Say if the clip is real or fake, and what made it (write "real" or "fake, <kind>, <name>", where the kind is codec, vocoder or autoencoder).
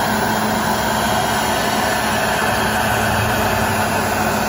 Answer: real